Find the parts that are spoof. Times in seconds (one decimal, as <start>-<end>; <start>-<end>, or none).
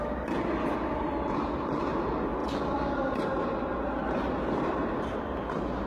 none